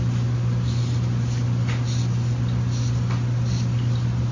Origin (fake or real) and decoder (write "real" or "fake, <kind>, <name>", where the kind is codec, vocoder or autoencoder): real